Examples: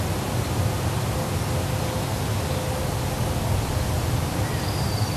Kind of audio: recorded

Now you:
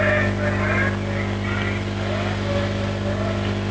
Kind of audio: recorded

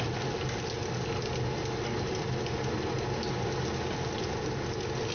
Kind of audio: recorded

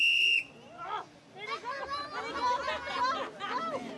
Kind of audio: recorded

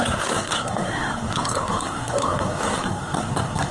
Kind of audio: remade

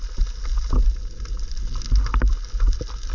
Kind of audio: recorded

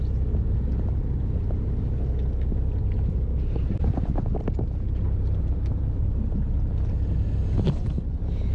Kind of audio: recorded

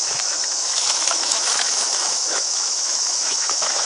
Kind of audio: remade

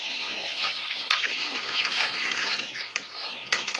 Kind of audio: remade